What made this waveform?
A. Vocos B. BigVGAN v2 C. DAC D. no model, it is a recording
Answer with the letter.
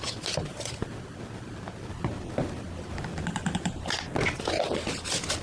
D